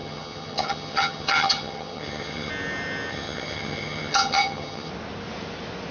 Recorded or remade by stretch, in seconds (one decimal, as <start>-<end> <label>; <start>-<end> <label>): 0.0-2.5 remade; 2.5-3.1 recorded; 3.1-4.9 remade; 4.9-5.9 recorded